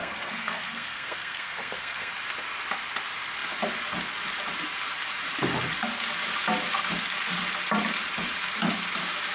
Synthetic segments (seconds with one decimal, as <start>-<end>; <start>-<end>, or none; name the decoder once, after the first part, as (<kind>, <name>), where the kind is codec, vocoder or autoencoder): 0.0-2.1 (codec, SNAC)